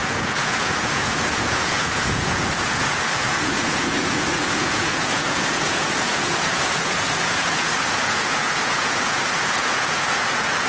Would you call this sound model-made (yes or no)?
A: yes